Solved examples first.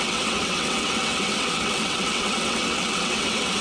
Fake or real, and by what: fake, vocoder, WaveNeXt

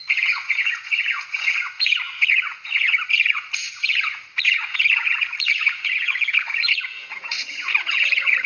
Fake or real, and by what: fake, vocoder, Vocos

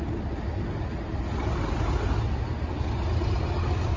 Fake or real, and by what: real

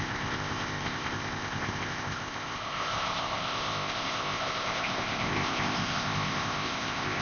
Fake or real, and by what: fake, codec, ZipCodec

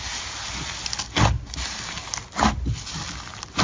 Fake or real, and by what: real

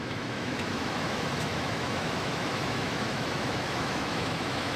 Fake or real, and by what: fake, autoencoder, DAC-VAE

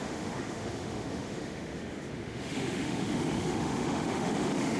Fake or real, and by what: fake, autoencoder, DAC-VAE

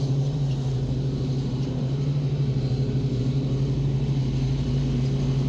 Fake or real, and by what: fake, vocoder, BigVGAN v2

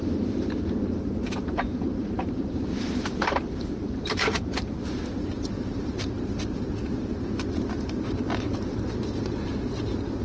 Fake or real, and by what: fake, vocoder, BigVGAN v2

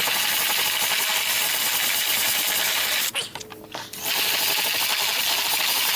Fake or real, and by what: real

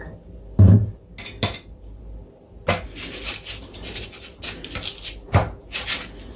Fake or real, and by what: real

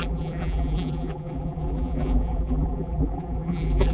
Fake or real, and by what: fake, vocoder, BigVGAN v2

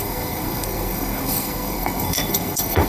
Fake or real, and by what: fake, codec, SNAC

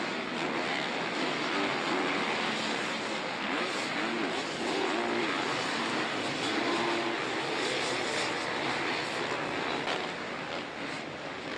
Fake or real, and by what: real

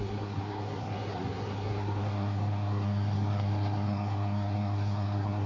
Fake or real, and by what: fake, codec, SNAC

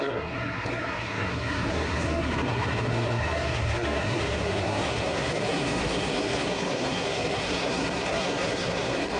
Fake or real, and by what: fake, codec, SNAC